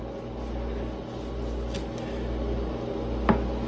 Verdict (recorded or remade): recorded